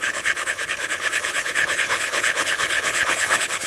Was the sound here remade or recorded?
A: remade